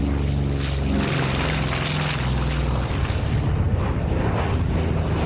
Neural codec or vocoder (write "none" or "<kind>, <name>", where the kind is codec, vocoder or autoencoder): none